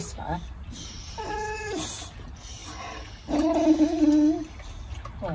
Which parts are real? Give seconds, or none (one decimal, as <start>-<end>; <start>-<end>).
0.0-5.3